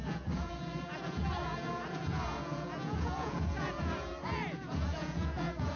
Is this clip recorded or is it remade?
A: remade